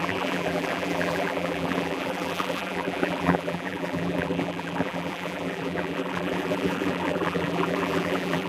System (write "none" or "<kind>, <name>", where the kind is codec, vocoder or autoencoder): vocoder, BigVGAN v2